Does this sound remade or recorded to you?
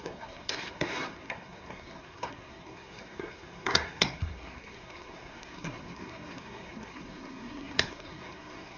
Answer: remade